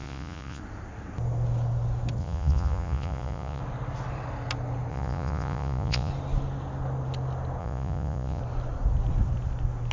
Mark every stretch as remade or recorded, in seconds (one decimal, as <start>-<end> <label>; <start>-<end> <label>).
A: 0.0-0.6 remade; 0.6-2.2 recorded; 2.2-3.6 remade; 3.6-4.9 recorded; 4.9-6.1 remade; 6.1-7.6 recorded; 7.6-8.4 remade; 8.4-9.9 recorded

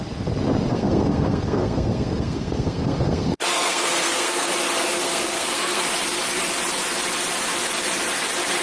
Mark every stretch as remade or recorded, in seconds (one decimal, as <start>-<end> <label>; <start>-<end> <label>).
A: 0.0-0.7 recorded; 0.7-4.5 remade; 4.5-5.0 recorded; 5.0-5.8 remade; 5.8-8.6 recorded

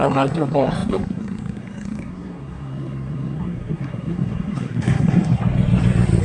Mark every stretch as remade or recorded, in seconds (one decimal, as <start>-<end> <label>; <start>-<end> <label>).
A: 0.0-5.4 remade; 5.4-6.2 recorded

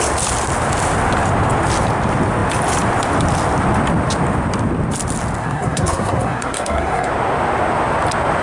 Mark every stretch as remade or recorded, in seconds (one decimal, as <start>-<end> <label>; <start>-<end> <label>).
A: 0.0-5.4 recorded; 5.4-7.1 remade; 7.1-8.4 recorded

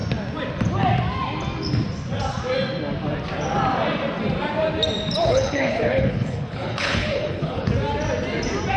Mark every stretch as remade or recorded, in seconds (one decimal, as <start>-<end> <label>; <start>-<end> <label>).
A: 0.0-5.2 recorded; 5.2-7.7 remade; 7.7-8.8 recorded

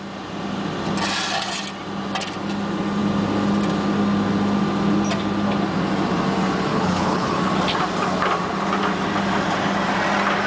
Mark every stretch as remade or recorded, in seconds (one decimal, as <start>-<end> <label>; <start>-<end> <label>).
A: 0.0-6.7 recorded; 6.7-7.4 remade; 7.4-10.5 recorded

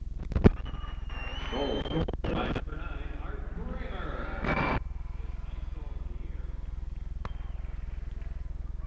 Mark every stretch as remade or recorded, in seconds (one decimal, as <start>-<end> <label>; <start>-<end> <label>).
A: 0.0-8.9 recorded

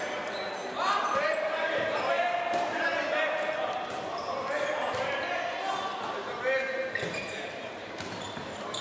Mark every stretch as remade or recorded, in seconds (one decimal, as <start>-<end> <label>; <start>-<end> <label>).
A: 0.0-2.9 remade; 2.9-6.9 recorded; 6.9-8.8 remade